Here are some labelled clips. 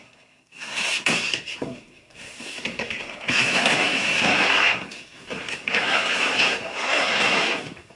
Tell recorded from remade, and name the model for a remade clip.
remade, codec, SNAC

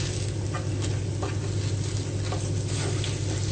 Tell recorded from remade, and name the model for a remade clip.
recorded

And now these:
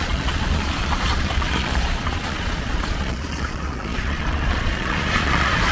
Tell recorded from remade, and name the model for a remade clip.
remade, vocoder, Vocos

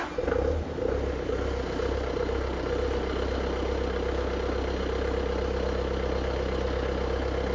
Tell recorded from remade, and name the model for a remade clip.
recorded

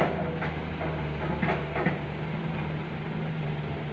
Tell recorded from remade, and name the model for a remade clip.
recorded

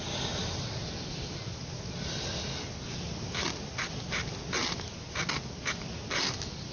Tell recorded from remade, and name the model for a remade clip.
recorded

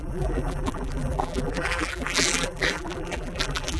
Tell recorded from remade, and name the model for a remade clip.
remade, vocoder, BigVGAN v2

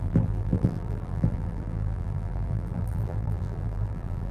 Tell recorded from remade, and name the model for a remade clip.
remade, vocoder, BigVGAN v2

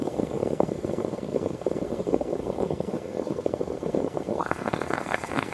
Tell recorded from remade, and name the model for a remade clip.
remade, codec, SNAC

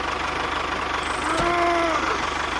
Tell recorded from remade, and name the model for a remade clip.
recorded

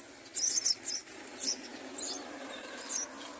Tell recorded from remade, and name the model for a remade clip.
recorded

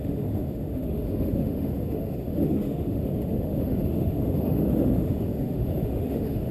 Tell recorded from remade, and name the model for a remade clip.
remade, autoencoder, DAC-VAE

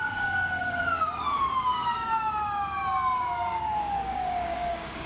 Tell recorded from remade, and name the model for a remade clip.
remade, codec, DAC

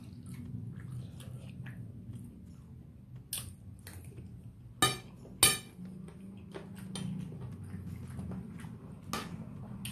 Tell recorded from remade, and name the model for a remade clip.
recorded